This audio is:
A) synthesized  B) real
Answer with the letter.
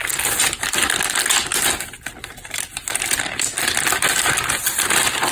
B